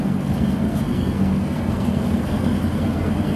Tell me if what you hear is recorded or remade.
remade